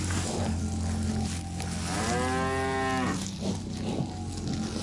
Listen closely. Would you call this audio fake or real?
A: real